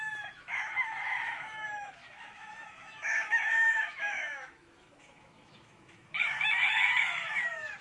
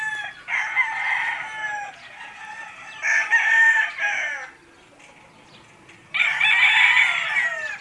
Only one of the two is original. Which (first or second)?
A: second